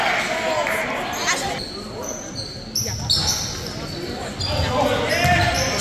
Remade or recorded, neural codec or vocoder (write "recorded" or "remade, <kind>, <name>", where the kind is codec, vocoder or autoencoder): recorded